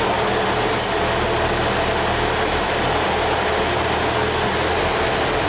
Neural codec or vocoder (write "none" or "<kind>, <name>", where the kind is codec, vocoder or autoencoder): none